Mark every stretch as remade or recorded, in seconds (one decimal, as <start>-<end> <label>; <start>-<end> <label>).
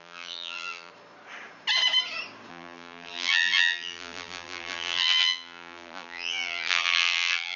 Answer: 0.0-0.9 remade; 0.9-2.5 recorded; 2.5-7.6 remade